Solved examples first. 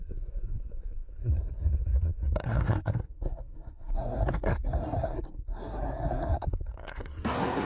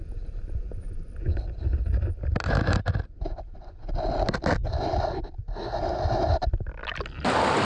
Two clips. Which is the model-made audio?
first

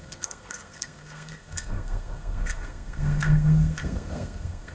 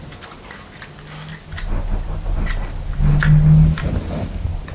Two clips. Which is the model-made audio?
first